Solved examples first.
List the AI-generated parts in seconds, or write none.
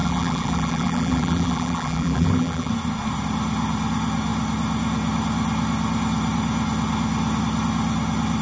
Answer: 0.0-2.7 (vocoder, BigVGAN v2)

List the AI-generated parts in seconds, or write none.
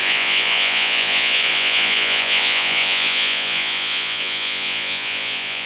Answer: 0.0-5.7 (vocoder, Vocos)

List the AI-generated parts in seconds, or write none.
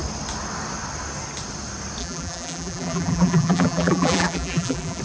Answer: 2.0-5.0 (vocoder, BigVGAN v2)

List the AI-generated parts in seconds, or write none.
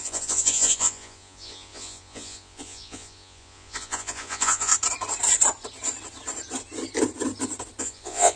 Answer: 0.0-4.7 (vocoder, Vocos); 7.8-8.4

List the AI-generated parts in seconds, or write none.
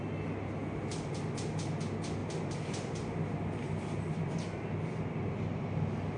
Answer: none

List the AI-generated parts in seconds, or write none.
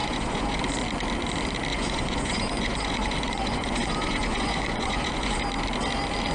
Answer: 0.0-0.6 (vocoder, Vocos); 1.7-5.4